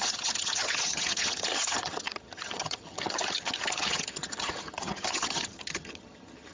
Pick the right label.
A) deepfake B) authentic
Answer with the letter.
A